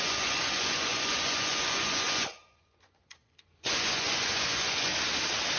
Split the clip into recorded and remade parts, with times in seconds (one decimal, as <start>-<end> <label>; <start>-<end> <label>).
0.0-4.9 remade; 4.9-5.6 recorded